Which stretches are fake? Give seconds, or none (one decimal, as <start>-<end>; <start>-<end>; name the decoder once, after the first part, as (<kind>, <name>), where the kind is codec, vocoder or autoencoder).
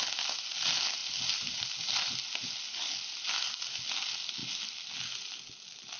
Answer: none